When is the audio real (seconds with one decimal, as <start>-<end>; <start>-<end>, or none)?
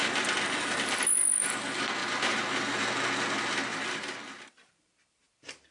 0.9-2.0; 2.8-3.7; 4.9-5.7